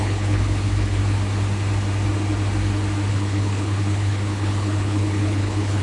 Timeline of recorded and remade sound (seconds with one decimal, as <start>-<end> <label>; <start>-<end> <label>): 0.0-1.0 remade; 1.0-3.1 recorded; 3.1-5.8 remade